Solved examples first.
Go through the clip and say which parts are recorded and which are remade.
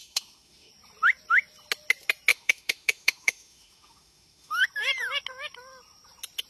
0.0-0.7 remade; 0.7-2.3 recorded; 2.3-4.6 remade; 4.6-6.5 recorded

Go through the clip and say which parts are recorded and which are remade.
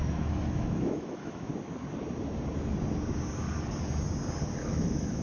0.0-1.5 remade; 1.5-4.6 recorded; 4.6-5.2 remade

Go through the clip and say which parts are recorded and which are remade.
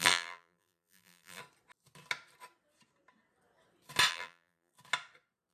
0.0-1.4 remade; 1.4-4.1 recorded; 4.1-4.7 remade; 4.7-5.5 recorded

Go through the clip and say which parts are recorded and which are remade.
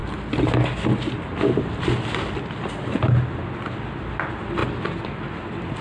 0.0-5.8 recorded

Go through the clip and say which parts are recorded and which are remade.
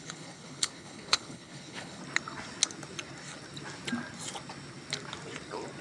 0.0-2.0 remade; 2.0-5.8 recorded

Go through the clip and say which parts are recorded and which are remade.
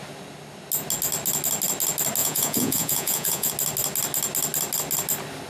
0.0-2.2 recorded; 2.2-3.5 remade; 3.5-5.5 recorded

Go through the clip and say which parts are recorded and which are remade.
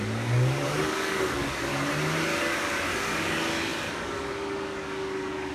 0.0-1.7 remade; 1.7-2.4 recorded; 2.4-5.5 remade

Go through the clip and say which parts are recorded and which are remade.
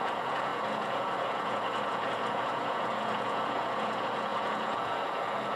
0.0-5.6 remade